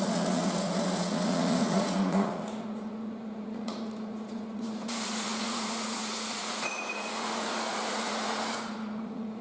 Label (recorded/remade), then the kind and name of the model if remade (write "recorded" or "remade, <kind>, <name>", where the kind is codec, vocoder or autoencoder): remade, vocoder, Vocos